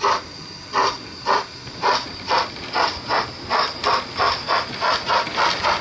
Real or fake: real